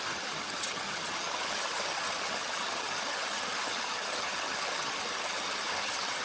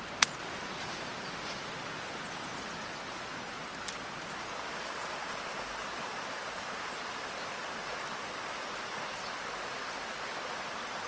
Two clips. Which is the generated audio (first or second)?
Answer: first